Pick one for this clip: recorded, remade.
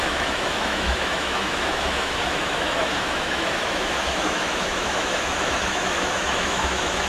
remade